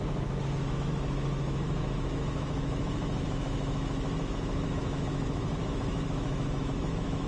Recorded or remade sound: remade